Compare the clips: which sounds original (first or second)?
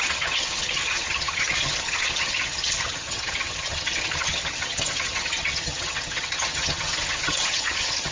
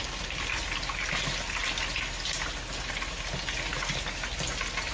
second